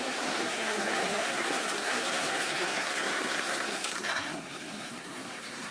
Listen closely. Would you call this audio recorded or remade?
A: remade